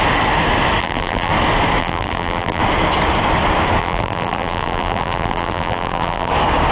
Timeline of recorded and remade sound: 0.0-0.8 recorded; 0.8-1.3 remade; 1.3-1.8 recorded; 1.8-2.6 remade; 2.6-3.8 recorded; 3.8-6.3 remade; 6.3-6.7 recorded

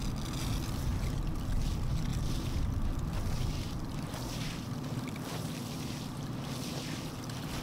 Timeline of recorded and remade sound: 0.0-0.9 recorded; 0.9-1.5 remade; 1.5-2.1 recorded; 2.1-5.9 remade; 5.9-7.6 recorded

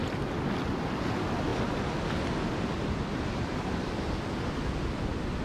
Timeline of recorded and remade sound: 0.0-5.4 recorded

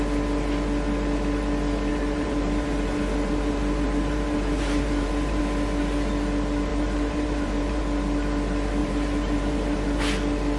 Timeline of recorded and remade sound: 0.0-1.9 recorded; 1.9-5.4 remade; 5.4-6.7 recorded; 6.7-7.8 remade; 7.8-8.8 recorded; 8.8-10.0 remade; 10.0-10.6 recorded

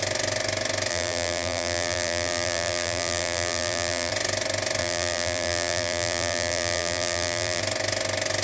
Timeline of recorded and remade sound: 0.0-0.9 recorded; 0.9-4.1 remade; 4.1-4.8 recorded; 4.8-7.6 remade; 7.6-8.4 recorded

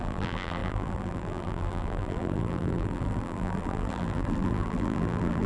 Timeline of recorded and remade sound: 0.0-5.5 remade

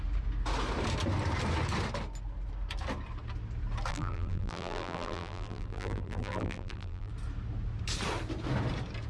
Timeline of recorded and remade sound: 0.0-3.9 recorded; 3.9-7.1 remade; 7.1-9.1 recorded